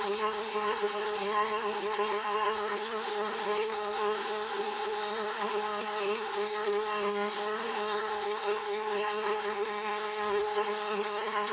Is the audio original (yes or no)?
no